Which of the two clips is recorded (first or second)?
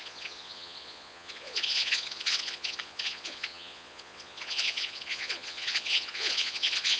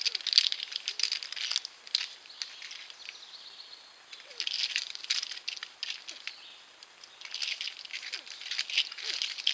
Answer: second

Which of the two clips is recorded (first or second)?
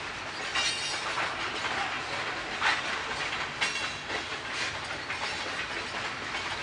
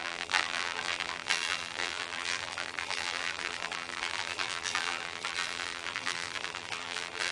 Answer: first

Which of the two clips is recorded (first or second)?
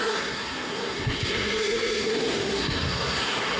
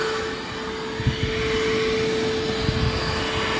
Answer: second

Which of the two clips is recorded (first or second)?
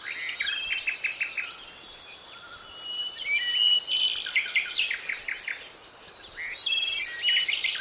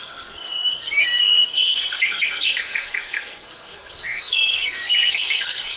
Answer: first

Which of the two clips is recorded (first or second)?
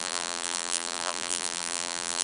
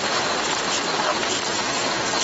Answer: second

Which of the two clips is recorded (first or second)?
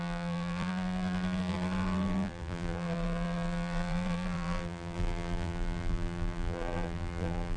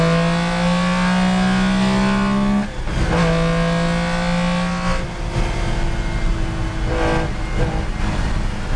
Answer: second